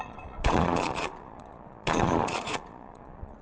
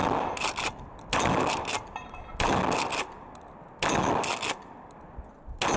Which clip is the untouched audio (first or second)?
second